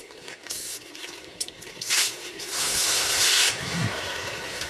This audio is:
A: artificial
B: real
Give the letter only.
A